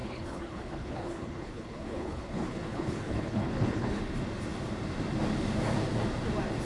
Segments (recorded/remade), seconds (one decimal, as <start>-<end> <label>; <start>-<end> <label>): 0.0-4.0 remade; 4.0-6.6 recorded